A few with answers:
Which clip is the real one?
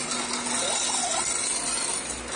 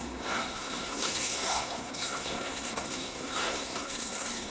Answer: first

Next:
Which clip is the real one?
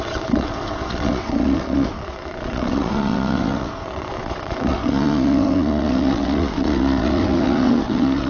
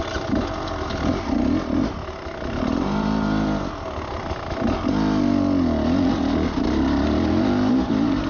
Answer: second